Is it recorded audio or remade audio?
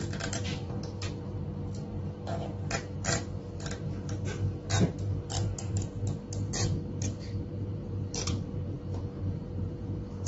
remade